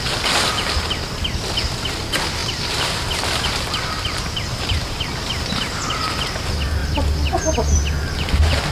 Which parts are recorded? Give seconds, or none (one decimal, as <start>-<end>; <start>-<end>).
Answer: 0.0-2.4; 5.8-6.8; 7.4-8.7